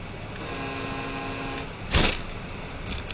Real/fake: real